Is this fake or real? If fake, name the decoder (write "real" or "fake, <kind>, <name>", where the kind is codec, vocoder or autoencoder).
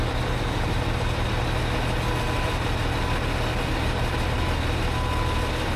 real